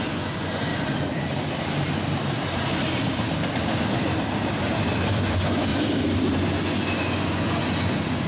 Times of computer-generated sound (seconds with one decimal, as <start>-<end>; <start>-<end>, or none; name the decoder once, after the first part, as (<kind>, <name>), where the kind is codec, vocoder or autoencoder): 0.0-0.7 (vocoder, Vocos); 5.1-5.7; 6.4-8.3